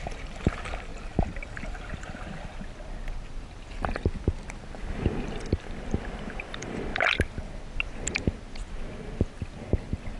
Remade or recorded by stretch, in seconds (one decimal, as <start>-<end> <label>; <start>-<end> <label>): 0.0-0.9 remade; 0.9-4.7 recorded; 4.7-6.9 remade; 6.9-9.6 recorded; 9.6-10.2 remade